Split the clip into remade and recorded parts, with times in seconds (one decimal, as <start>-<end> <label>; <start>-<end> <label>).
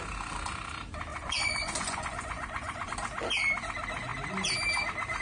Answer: 0.0-1.1 recorded; 1.1-2.9 remade; 2.9-5.2 recorded